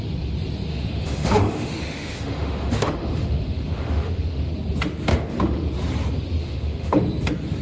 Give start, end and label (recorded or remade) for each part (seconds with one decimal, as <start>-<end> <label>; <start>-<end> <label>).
0.0-0.7 recorded; 0.7-4.5 remade; 4.5-5.1 recorded; 5.1-5.7 remade; 5.7-6.4 recorded; 6.4-7.0 remade; 7.0-7.6 recorded